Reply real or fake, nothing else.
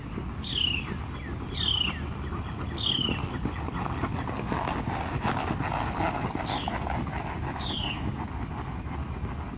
real